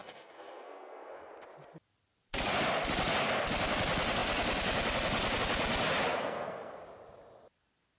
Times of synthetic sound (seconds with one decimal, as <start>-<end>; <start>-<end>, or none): 0.0-1.3; 6.1-6.8